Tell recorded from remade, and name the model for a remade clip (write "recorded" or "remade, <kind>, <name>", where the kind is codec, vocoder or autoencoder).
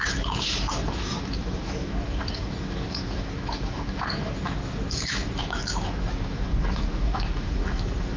remade, autoencoder, DAC-VAE